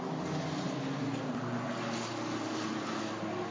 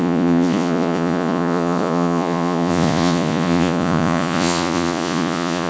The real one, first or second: first